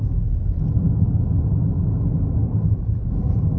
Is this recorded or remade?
recorded